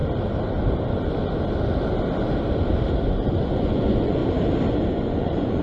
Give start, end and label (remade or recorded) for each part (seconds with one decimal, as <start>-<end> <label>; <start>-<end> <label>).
0.0-3.4 recorded; 3.4-4.2 remade; 4.2-4.9 recorded; 4.9-5.6 remade